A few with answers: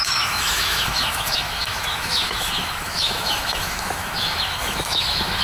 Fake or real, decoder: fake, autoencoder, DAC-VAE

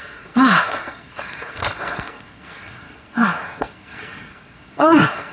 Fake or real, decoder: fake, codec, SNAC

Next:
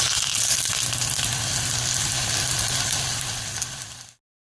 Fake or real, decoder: real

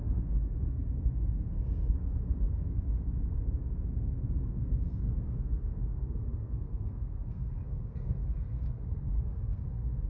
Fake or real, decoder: fake, codec, SNAC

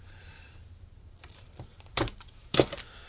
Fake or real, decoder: fake, vocoder, BigVGAN v2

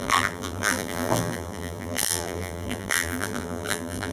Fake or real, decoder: fake, vocoder, BigVGAN v2